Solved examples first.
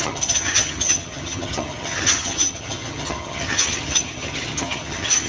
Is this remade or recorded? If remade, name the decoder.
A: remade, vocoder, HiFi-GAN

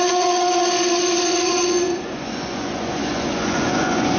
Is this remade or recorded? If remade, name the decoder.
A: remade, vocoder, Vocos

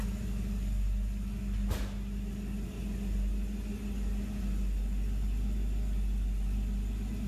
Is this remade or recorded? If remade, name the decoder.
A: recorded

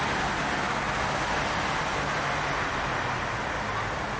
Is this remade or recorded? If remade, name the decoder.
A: recorded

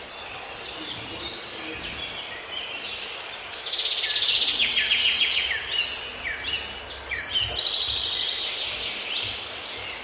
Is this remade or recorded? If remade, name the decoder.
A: recorded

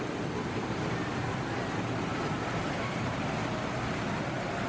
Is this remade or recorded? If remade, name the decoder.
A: recorded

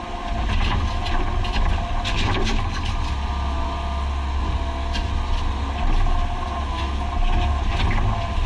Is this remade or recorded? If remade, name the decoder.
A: recorded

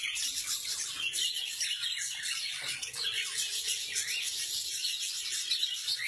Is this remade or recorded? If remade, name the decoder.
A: recorded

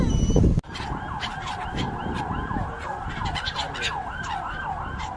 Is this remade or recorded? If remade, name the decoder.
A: recorded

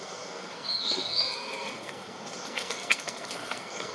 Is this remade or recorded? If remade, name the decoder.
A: remade, codec, SNAC